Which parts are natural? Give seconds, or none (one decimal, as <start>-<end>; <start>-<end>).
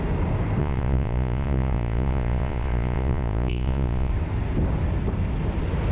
0.0-0.6; 4.1-5.9